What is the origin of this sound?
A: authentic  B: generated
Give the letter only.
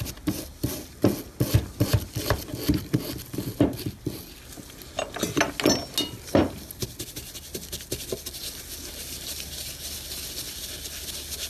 A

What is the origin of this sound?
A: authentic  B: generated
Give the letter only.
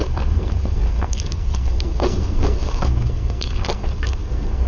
B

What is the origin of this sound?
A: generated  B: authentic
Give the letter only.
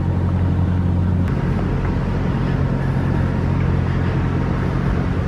B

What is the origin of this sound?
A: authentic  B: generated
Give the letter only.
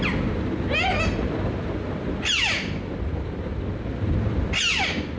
A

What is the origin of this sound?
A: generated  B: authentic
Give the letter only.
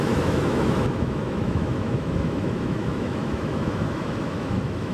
A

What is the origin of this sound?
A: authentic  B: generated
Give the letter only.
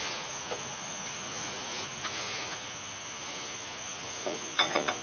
B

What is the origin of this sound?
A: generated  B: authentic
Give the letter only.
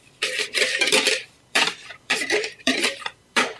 A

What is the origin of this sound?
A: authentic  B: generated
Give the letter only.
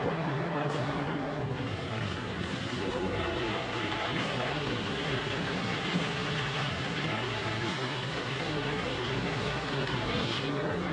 B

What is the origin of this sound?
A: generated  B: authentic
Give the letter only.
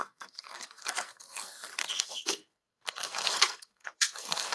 A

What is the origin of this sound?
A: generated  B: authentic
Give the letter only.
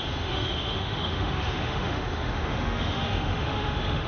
A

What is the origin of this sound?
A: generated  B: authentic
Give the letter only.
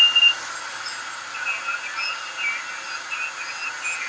B